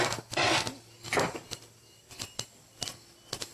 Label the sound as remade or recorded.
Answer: recorded